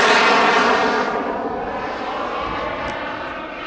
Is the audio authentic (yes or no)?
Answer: yes